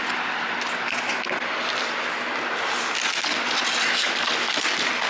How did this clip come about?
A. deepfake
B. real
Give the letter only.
B